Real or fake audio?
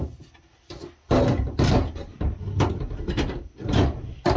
real